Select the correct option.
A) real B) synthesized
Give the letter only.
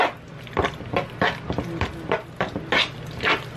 A